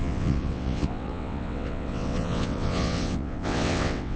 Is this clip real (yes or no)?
no